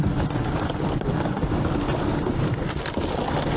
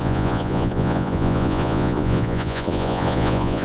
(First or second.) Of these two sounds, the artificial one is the second